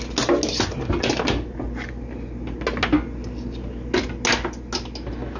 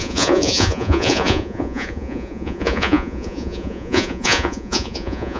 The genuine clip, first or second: first